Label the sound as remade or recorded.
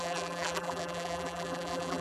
remade